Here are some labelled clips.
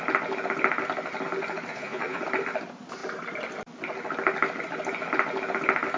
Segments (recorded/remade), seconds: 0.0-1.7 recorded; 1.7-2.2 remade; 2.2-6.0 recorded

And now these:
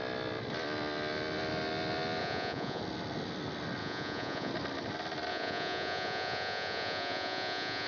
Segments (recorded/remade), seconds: 0.0-2.2 recorded; 2.2-2.8 remade; 2.8-3.8 recorded; 3.8-4.5 remade; 4.5-5.3 recorded; 5.3-7.9 remade